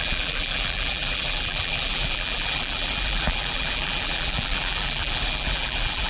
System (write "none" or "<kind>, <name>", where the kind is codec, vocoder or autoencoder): vocoder, BigVGAN v2